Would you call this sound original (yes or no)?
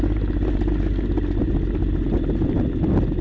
yes